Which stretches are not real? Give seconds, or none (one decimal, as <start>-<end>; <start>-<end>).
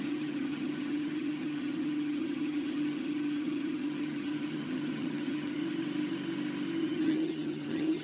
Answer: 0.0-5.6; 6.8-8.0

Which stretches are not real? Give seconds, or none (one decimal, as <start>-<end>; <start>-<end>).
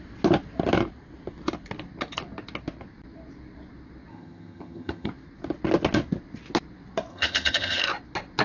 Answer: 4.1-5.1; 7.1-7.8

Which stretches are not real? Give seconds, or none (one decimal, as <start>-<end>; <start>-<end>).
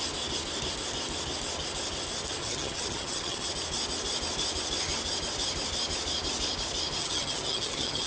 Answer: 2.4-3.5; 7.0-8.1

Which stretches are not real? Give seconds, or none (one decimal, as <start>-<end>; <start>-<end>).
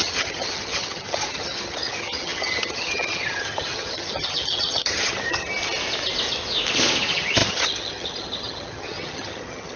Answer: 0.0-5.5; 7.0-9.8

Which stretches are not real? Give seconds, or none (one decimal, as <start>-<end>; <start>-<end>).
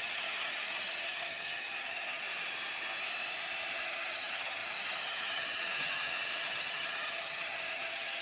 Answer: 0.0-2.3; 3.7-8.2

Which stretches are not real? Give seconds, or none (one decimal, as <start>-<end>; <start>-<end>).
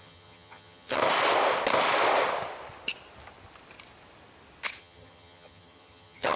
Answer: 0.0-1.0; 4.8-6.4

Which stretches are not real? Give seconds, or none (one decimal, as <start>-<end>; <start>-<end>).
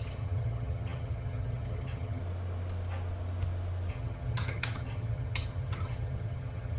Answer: 0.0-2.2; 3.9-6.8